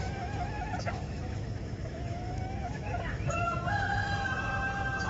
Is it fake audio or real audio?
fake